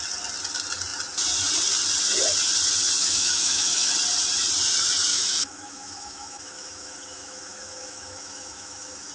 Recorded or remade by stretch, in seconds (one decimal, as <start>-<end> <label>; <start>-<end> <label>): 0.0-3.0 recorded; 3.0-3.9 remade; 3.9-5.1 recorded; 5.1-9.1 remade